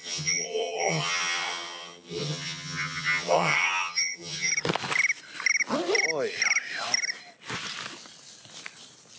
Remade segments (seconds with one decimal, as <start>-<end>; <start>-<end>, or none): 0.0-4.5